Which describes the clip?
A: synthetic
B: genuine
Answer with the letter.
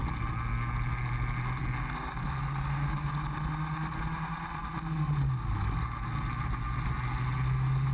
B